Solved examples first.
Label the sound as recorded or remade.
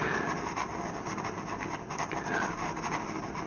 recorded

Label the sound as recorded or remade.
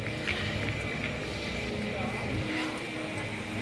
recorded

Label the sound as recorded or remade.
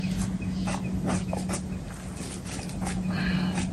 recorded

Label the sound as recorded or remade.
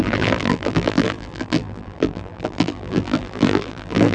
remade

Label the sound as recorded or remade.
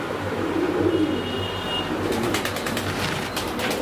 recorded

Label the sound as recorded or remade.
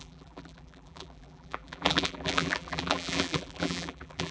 remade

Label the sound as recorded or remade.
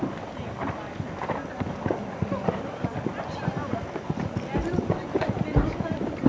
recorded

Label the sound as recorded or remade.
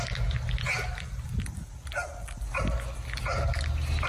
recorded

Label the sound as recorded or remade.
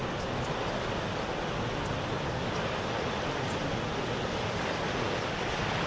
recorded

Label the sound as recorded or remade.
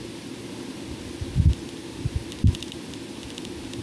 recorded